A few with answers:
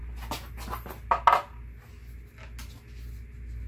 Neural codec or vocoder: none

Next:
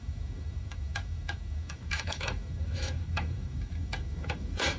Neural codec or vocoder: autoencoder, DAC-VAE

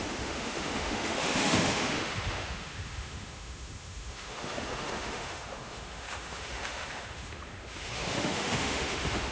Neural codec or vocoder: autoencoder, DAC-VAE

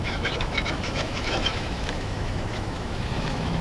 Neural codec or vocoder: autoencoder, DAC-VAE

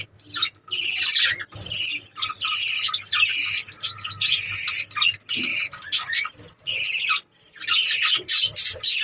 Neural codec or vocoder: none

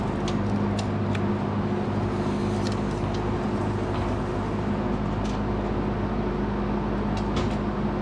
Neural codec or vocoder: none